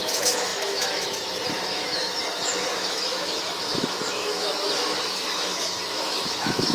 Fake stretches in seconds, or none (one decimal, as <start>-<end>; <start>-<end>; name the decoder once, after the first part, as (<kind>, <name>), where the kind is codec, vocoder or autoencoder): 0.0-6.7 (autoencoder, DAC-VAE)